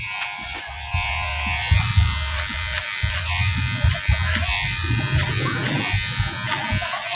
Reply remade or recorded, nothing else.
recorded